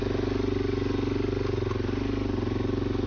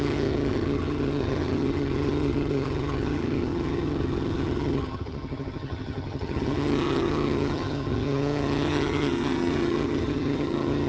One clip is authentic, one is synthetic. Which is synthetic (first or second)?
second